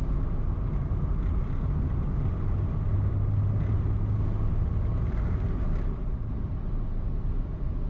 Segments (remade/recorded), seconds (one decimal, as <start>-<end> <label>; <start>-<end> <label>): 0.0-7.9 recorded